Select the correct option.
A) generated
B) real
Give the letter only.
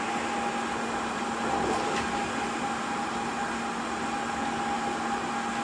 B